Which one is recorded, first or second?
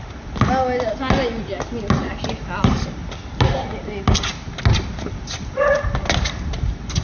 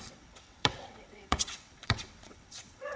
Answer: first